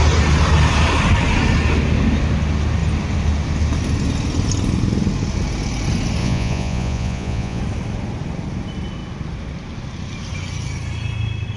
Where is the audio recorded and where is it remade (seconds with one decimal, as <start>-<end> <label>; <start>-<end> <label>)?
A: 0.0-6.2 recorded; 6.2-7.6 remade; 7.6-11.6 recorded